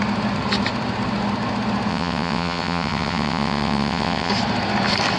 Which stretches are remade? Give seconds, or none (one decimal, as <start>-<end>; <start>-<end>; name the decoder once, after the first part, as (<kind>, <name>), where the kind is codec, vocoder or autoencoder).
1.9-4.3 (vocoder, WaveNeXt)

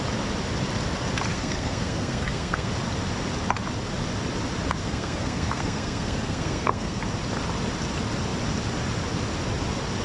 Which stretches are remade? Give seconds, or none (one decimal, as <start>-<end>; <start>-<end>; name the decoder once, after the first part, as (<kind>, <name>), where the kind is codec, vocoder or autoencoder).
1.3-2.7 (codec, SNAC); 4.8-7.0

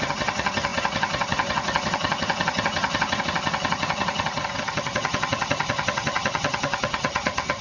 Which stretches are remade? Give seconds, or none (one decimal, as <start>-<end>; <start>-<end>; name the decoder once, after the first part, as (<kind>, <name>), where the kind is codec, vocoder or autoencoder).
0.0-7.6 (vocoder, HiFi-GAN)

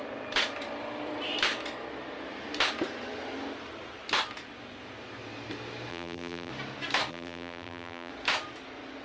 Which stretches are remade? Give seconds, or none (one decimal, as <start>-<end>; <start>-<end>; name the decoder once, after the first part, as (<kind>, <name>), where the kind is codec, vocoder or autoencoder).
5.9-6.5 (vocoder, BigVGAN v2); 7.1-8.1

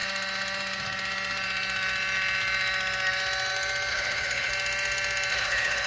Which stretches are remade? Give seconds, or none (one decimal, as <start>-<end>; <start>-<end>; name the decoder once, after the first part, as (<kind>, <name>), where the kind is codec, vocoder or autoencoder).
3.9-4.5 (codec, HILCodec); 5.3-5.9

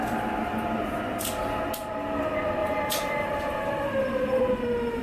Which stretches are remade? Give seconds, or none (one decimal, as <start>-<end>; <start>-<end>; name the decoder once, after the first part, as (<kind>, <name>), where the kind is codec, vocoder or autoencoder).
2.6-4.4 (vocoder, BigVGAN v2)